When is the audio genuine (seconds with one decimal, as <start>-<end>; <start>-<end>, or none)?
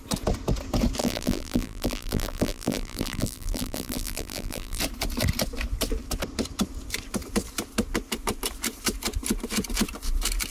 0.0-1.0; 4.8-10.5